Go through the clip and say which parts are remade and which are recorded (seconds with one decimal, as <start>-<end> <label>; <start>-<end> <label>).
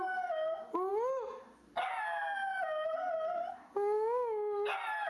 0.0-5.1 recorded